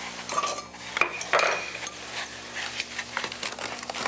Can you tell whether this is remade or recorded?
recorded